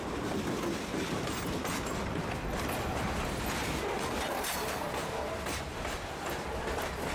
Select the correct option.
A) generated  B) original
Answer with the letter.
B